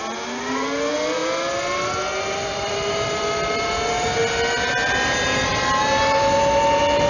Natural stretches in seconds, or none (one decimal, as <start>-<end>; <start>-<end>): 0.0-7.1